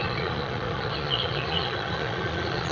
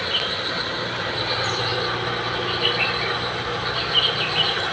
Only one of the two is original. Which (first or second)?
second